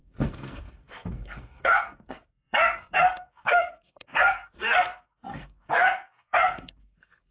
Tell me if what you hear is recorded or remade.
remade